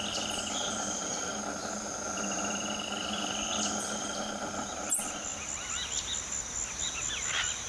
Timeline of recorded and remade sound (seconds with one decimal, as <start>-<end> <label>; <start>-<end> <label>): 0.0-7.7 recorded